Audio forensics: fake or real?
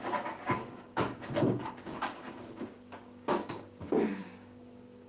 fake